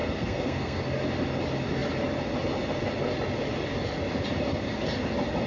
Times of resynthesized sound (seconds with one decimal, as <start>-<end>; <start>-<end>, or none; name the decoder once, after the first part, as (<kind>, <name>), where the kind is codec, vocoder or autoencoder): 0.0-0.8 (codec, SNAC)